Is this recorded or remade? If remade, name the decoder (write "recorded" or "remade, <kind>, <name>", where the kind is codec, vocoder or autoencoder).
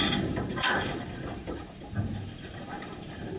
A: remade, vocoder, BigVGAN v2